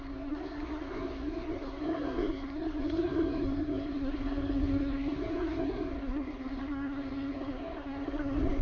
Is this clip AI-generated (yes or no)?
yes